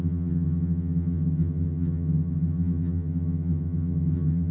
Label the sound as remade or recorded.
remade